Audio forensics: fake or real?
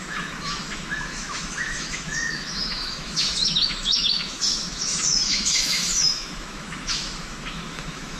fake